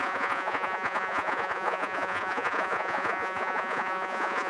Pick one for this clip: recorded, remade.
remade